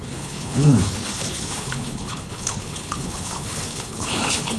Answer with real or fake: fake